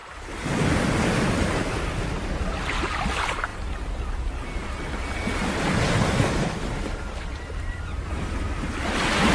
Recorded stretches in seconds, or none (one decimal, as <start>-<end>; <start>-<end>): 0.0-9.3

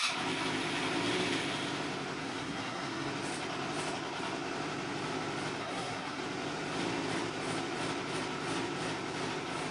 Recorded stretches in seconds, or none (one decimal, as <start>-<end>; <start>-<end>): 0.0-2.2; 3.1-5.6; 6.2-9.7

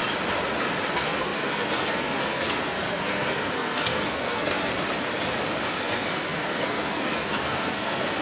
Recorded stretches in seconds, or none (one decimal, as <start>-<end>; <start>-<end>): 0.0-0.9; 4.7-5.7

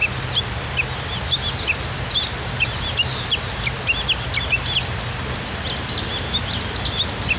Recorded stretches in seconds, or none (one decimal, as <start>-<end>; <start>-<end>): 0.0-7.4

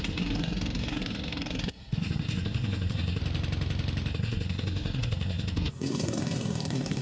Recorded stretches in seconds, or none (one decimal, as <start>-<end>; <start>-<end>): 3.2-4.1

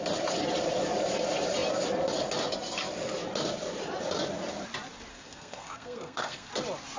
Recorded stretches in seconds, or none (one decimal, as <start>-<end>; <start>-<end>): 0.0-5.1; 6.5-7.0